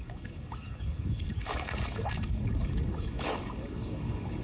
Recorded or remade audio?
remade